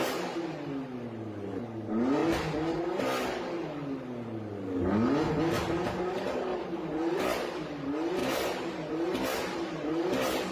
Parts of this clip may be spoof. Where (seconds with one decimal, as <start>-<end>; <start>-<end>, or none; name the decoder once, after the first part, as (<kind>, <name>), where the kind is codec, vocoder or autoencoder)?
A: 6.5-7.2 (vocoder, BigVGAN v2)